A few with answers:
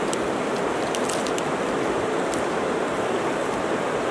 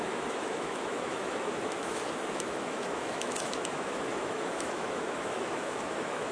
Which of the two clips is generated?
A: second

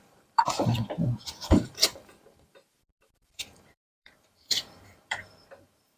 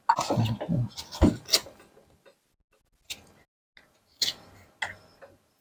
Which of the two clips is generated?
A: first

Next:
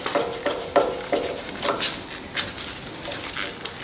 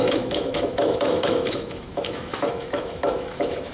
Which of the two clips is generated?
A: second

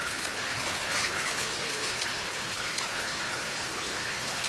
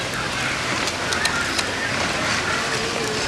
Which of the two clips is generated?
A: first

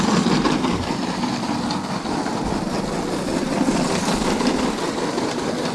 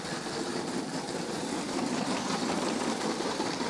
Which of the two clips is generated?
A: second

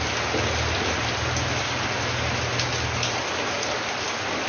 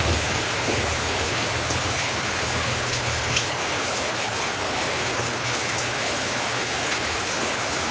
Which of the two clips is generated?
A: second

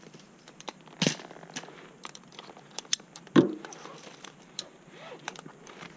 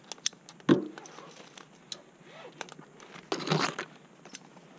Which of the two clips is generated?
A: first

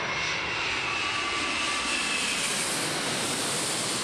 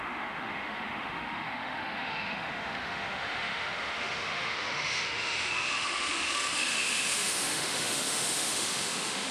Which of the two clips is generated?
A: second